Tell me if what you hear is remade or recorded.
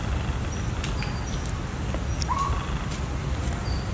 recorded